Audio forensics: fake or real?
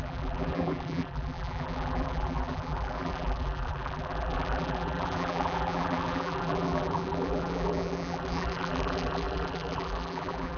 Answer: fake